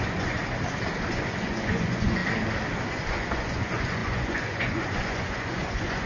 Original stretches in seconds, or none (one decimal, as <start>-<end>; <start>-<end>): 0.4-1.1; 2.2-2.9